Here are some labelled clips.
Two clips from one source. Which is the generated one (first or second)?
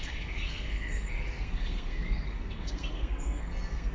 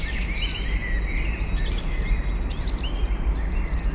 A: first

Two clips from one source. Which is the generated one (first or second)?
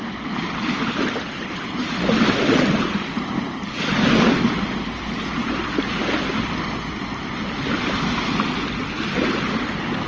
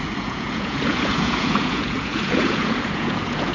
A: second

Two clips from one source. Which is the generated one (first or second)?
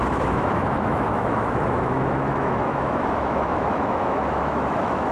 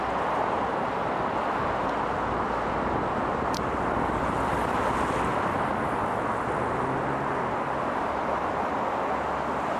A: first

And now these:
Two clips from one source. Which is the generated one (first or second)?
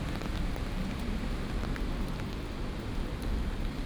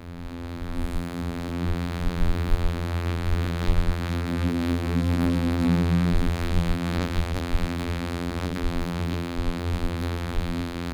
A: second